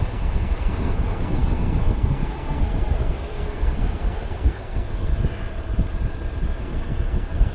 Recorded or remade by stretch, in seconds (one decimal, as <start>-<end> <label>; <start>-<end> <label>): 0.0-5.1 remade; 5.1-6.6 recorded; 6.6-7.5 remade